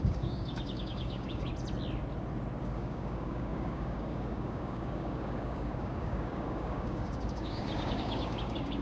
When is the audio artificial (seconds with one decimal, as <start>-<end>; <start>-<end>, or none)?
0.0-1.5; 2.6-8.8